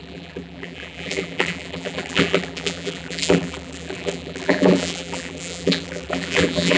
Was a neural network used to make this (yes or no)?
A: yes